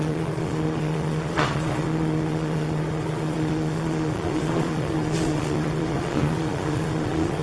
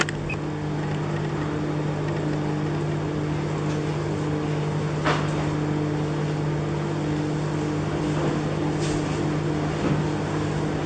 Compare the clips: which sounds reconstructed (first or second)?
first